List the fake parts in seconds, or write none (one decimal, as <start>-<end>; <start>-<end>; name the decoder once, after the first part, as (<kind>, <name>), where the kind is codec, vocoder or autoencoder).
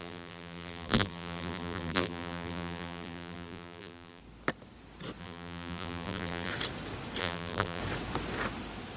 0.0-4.2 (vocoder, BigVGAN v2); 5.2-6.5; 7.2-7.8